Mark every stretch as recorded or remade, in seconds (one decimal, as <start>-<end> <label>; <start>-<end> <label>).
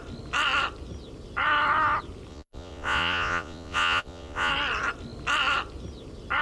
0.0-2.3 recorded; 2.3-4.5 remade; 4.5-6.4 recorded